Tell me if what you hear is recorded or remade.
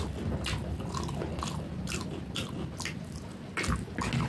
recorded